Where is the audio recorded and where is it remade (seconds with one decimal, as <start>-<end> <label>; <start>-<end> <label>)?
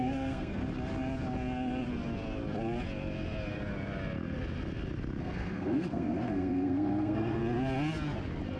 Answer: 0.0-0.6 remade; 0.6-5.2 recorded; 5.2-7.4 remade; 7.4-8.6 recorded